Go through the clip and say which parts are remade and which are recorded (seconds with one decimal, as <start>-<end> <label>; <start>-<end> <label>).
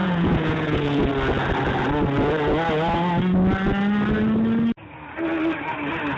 0.0-1.1 remade; 1.1-6.2 recorded